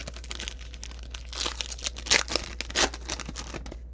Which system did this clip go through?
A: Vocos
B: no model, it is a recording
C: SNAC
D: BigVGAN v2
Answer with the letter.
B